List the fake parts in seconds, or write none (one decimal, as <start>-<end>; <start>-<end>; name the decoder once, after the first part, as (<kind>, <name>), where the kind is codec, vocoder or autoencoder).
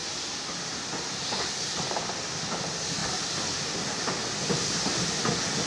none